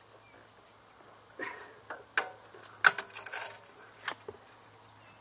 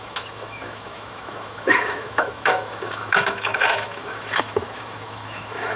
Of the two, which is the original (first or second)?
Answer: first